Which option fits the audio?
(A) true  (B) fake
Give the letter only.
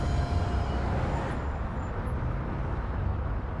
A